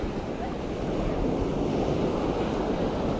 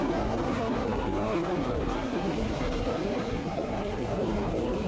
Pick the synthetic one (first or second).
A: second